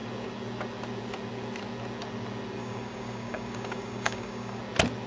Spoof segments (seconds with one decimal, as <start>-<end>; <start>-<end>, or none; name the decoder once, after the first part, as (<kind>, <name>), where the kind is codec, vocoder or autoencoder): 2.6-4.6 (codec, DAC)